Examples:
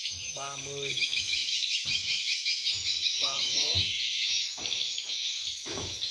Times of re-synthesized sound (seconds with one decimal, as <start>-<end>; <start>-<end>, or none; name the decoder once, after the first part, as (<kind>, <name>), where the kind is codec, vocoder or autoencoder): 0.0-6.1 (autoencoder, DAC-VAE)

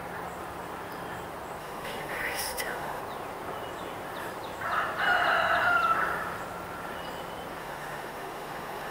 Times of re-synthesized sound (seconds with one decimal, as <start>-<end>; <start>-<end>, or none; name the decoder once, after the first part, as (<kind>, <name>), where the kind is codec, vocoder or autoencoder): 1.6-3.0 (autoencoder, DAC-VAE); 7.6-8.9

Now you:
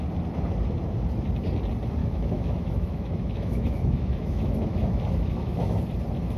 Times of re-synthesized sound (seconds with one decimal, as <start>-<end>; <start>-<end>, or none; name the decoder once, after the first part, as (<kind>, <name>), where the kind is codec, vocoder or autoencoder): 2.0-5.8 (autoencoder, DAC-VAE)